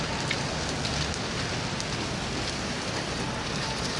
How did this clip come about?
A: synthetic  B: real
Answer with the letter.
B